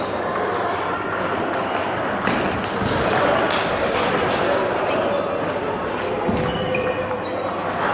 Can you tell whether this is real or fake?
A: real